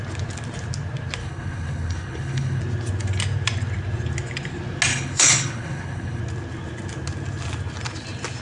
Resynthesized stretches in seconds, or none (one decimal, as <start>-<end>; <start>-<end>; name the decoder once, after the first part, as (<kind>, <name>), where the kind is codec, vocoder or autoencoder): 1.2-2.6 (codec, HILCodec); 4.9-6.2